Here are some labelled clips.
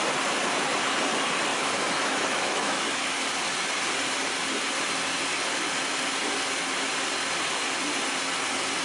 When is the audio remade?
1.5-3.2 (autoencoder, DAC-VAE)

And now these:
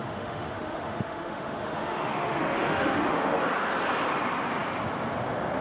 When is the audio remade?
0.0-3.4 (autoencoder, DAC-VAE)